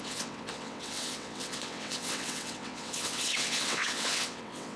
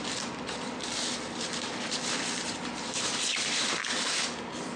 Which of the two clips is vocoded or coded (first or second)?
first